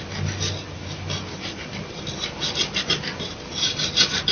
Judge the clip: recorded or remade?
recorded